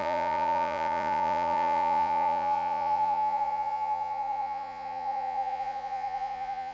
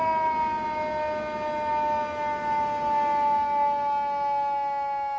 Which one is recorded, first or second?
second